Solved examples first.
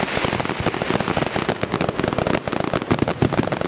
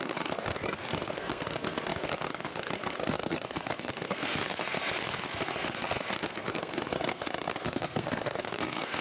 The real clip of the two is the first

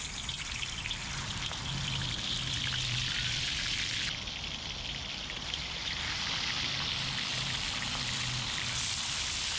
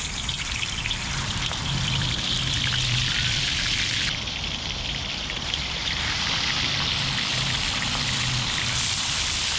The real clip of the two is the first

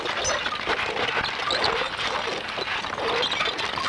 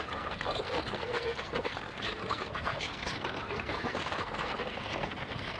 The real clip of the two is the first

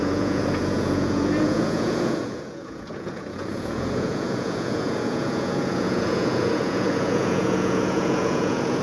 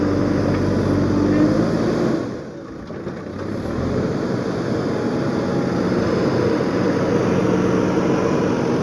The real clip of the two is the second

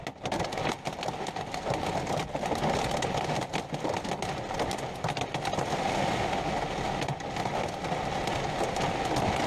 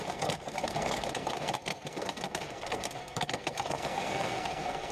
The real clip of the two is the first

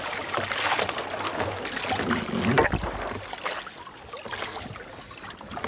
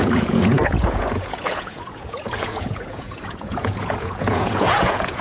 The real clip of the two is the first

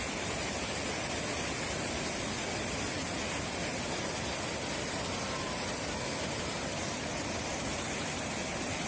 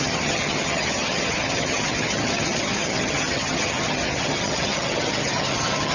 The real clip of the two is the first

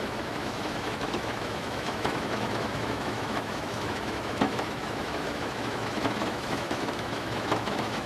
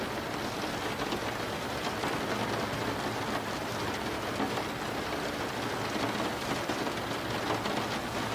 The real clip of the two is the second